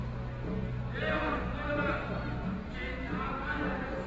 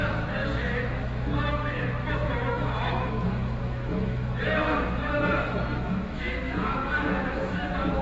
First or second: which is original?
first